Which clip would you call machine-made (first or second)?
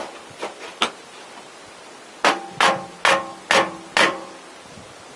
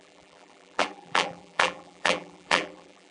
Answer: second